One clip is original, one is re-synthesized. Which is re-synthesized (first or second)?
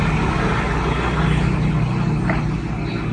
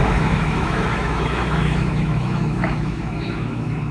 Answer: second